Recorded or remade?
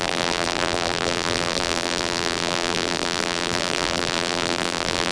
remade